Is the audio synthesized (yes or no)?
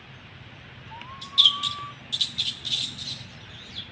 no